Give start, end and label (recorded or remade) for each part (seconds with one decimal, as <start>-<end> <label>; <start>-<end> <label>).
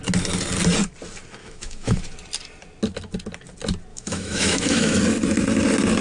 0.0-1.4 recorded; 1.4-2.0 remade; 2.0-3.9 recorded; 3.9-5.0 remade; 5.0-6.0 recorded